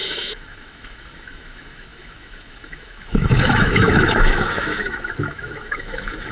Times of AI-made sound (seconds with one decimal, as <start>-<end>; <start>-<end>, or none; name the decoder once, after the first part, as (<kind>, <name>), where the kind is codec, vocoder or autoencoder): 0.0-6.3 (autoencoder, DAC-VAE)